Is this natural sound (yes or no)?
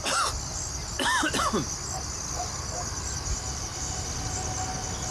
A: yes